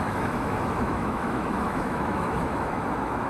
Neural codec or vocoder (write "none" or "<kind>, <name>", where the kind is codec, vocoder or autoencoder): autoencoder, DAC-VAE